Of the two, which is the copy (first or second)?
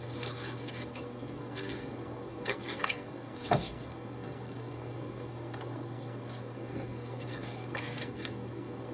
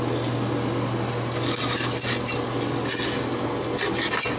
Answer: first